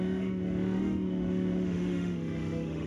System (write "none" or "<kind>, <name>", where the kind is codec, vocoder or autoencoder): autoencoder, DAC-VAE